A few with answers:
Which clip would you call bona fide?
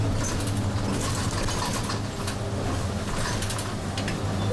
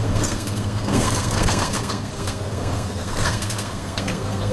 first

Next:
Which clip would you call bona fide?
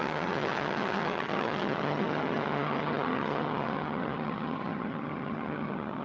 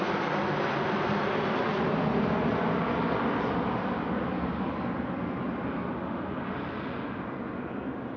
second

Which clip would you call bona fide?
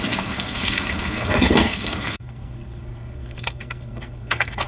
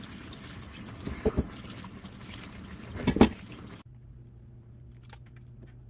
second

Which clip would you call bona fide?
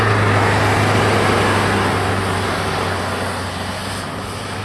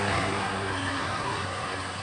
first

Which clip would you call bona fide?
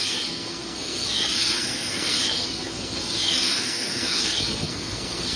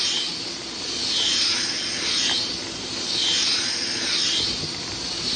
second